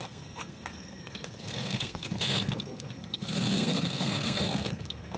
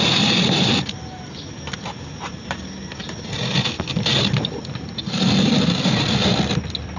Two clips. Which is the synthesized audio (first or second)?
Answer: first